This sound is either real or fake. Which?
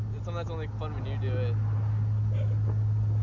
real